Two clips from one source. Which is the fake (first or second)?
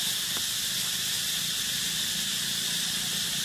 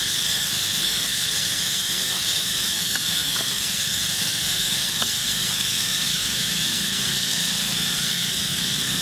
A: second